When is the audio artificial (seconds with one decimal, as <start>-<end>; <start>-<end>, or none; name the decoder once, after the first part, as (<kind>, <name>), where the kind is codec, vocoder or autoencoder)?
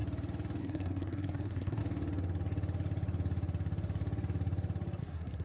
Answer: 0.6-1.8 (codec, SNAC); 5.0-5.4